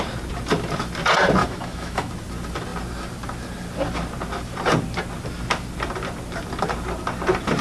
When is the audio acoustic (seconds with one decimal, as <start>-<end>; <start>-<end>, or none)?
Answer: 0.0-1.4; 2.1-7.6